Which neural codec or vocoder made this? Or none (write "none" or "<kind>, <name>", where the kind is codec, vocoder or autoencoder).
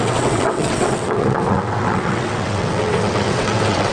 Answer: vocoder, WaveNeXt